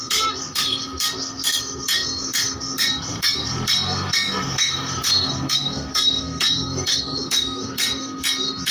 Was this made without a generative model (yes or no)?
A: no